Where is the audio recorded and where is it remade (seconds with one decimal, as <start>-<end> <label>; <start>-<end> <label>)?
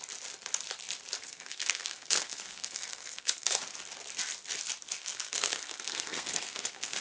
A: 0.0-1.2 recorded; 1.2-3.6 remade; 3.6-5.0 recorded; 5.0-7.0 remade